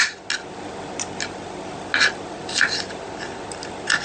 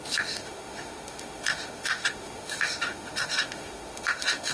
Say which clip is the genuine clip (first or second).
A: first